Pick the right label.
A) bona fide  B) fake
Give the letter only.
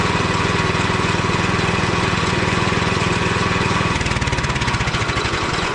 B